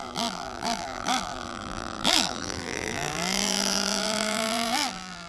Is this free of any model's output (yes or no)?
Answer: no